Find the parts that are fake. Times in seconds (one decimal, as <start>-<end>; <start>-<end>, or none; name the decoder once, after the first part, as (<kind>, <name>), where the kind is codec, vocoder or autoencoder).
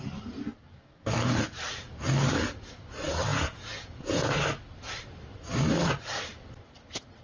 3.3-4.4 (vocoder, Vocos)